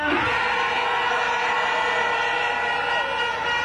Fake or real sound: real